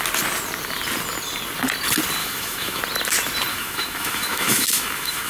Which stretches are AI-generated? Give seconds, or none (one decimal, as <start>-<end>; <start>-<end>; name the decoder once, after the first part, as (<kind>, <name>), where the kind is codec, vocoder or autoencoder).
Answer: 2.2-2.8 (autoencoder, DAC-VAE); 3.5-5.3